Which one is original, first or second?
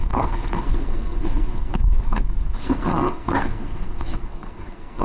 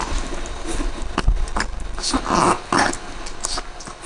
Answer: second